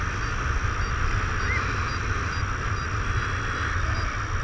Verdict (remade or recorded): recorded